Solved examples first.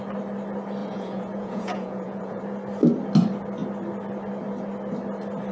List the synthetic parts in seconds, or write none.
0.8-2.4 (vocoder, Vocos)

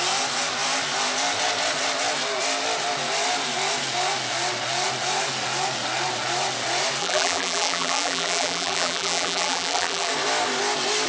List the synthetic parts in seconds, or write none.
7.0-10.1 (vocoder, BigVGAN v2)

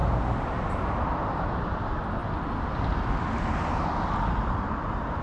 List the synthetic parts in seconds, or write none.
1.2-2.2 (vocoder, BigVGAN v2); 4.3-5.2

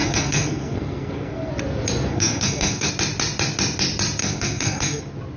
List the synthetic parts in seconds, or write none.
0.0-1.5 (codec, SNAC); 2.1-2.9; 4.2-5.0

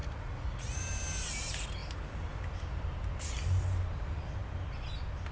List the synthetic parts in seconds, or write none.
0.0-0.8 (vocoder, Vocos)

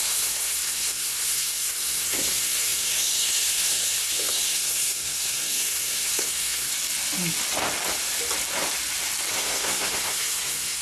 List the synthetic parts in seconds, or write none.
0.0-6.7 (codec, SNAC); 9.3-10.8

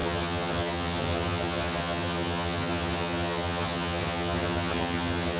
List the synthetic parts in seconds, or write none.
0.0-5.4 (vocoder, HiFi-GAN)

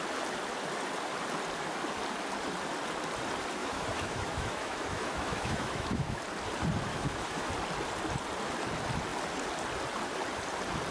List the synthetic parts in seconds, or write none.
3.6-6.2 (autoencoder, DAC-VAE); 6.9-7.5